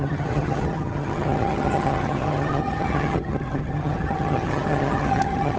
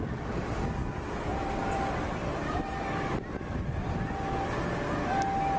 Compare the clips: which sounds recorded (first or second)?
second